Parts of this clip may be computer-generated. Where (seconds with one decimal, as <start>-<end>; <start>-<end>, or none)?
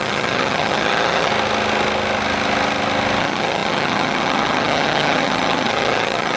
0.0-1.3; 3.2-6.4